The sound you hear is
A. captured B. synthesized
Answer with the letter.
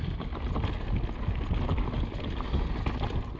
A